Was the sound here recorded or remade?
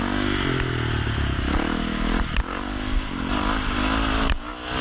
recorded